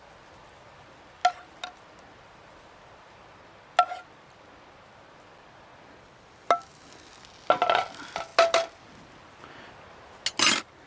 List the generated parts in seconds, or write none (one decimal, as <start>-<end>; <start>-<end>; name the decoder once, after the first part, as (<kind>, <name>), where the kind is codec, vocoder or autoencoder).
none